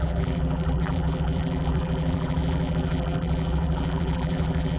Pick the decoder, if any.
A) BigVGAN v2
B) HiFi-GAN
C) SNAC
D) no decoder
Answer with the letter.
A